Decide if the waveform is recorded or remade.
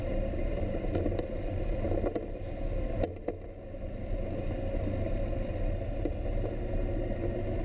recorded